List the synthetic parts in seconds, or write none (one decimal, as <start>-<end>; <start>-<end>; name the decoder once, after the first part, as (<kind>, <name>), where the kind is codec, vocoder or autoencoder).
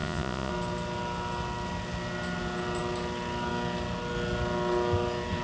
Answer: 0.0-0.5 (vocoder, Vocos)